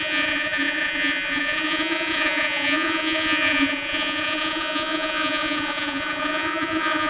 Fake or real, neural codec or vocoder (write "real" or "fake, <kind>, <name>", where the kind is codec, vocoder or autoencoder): fake, vocoder, Vocos